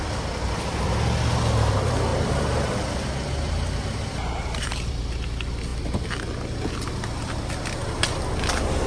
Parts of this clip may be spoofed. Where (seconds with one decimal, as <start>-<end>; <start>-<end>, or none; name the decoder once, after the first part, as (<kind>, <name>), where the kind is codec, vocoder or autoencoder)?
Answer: 4.2-5.0 (vocoder, BigVGAN v2); 5.7-7.5